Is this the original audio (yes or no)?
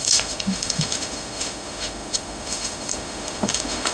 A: no